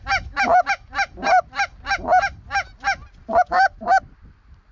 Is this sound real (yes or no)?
yes